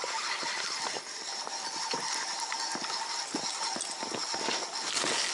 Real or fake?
real